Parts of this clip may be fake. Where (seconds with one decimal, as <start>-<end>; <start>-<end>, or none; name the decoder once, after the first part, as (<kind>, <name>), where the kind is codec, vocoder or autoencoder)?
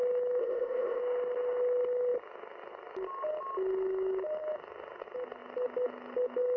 0.4-1.0 (codec, ZipCodec)